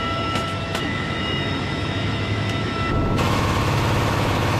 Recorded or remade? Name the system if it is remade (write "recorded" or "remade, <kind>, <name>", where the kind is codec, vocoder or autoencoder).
remade, autoencoder, DAC-VAE